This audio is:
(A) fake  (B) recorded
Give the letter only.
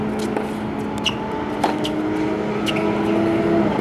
B